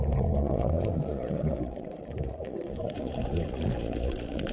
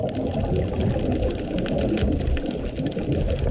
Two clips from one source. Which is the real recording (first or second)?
second